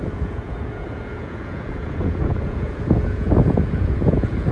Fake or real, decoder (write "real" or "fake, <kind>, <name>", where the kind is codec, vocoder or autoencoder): fake, vocoder, Vocos